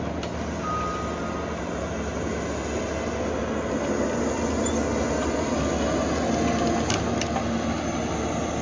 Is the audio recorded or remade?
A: recorded